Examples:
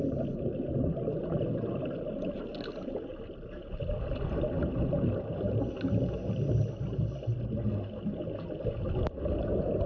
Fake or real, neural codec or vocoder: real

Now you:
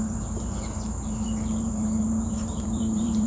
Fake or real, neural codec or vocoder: fake, vocoder, BigVGAN v2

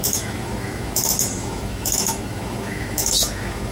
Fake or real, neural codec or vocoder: fake, autoencoder, DAC-VAE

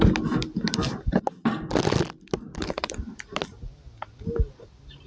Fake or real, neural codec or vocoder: real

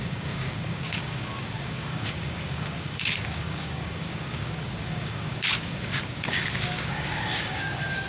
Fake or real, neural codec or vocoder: fake, codec, DAC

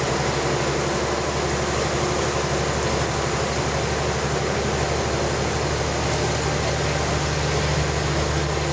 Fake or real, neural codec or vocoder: real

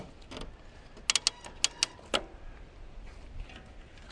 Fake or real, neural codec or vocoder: real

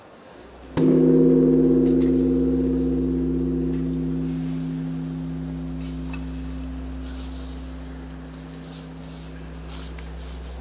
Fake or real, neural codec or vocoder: real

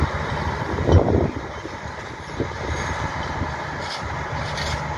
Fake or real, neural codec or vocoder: real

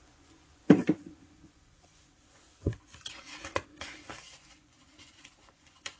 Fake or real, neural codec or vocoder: fake, vocoder, Vocos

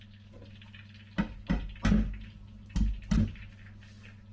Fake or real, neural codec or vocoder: real